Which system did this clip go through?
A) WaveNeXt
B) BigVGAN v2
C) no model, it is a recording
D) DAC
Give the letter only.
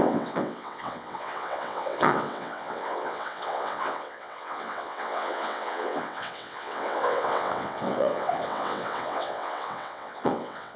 A